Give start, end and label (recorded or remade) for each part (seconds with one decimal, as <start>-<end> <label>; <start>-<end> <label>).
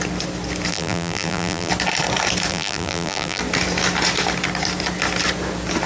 0.0-0.7 recorded; 0.7-1.7 remade; 1.7-2.5 recorded; 2.5-3.4 remade; 3.4-5.9 recorded